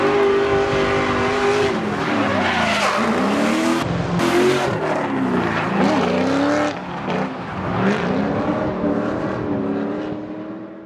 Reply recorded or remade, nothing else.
recorded